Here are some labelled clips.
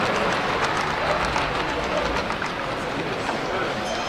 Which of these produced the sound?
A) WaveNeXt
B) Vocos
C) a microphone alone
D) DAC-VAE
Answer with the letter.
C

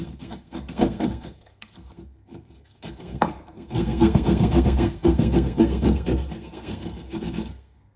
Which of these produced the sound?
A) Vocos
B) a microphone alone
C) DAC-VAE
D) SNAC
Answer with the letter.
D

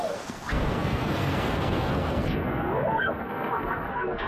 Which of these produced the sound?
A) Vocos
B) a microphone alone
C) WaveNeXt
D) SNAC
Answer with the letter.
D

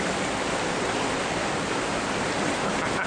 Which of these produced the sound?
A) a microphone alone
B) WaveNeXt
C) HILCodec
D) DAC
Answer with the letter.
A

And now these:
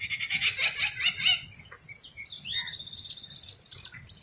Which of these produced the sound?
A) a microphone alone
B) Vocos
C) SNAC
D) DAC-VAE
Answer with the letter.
A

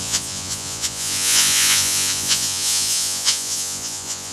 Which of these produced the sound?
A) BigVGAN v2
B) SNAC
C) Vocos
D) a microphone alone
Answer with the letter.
C